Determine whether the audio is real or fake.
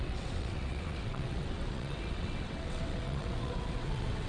fake